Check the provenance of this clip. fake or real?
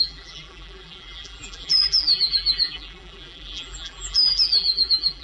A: fake